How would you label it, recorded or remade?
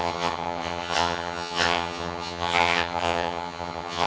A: remade